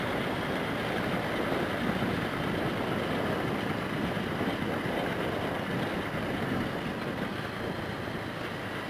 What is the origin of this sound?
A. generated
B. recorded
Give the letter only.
B